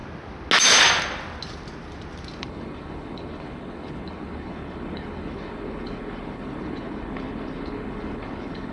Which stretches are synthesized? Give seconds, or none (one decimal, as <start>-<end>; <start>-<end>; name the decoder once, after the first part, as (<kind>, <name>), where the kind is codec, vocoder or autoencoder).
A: 2.4-8.7 (codec, HILCodec)